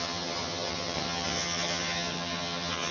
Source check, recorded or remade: remade